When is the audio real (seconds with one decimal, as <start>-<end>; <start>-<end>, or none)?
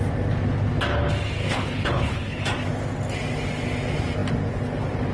0.0-1.4; 2.4-5.1